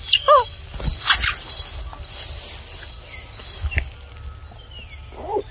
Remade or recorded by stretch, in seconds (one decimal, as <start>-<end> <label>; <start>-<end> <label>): 0.0-5.5 recorded